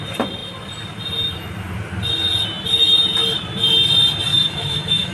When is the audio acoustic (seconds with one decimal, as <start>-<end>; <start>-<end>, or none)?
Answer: 0.0-4.3